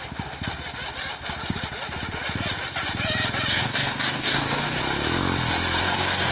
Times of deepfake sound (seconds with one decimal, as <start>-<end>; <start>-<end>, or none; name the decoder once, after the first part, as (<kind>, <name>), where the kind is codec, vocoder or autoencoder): 3.5-4.8 (codec, DAC); 5.8-6.3